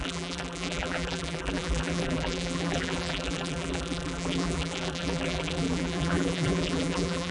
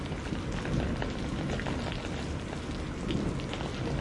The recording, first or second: second